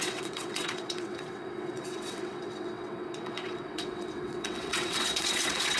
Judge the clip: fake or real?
fake